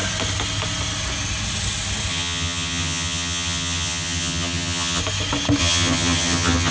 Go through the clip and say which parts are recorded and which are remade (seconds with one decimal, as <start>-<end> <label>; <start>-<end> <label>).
0.0-2.1 recorded; 2.1-5.0 remade; 5.0-5.6 recorded; 5.6-6.7 remade